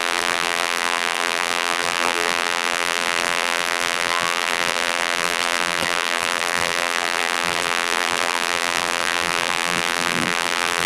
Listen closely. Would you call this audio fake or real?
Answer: fake